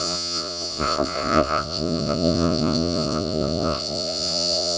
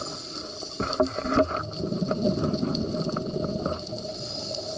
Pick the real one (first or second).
second